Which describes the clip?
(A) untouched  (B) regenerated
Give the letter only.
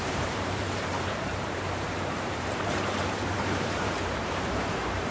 B